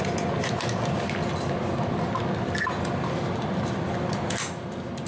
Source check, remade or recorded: recorded